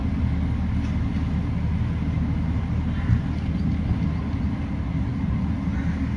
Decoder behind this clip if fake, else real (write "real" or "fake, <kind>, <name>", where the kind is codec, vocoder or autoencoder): real